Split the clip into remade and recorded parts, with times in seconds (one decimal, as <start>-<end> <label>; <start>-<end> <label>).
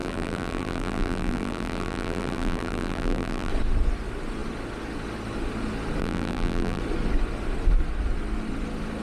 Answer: 0.0-3.5 remade; 3.5-6.0 recorded; 6.0-6.8 remade; 6.8-9.0 recorded